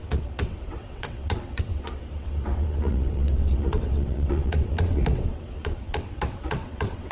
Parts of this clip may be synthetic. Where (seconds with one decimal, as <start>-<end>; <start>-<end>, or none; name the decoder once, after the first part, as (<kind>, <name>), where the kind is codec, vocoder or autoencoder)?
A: 0.0-7.1 (vocoder, WaveNeXt)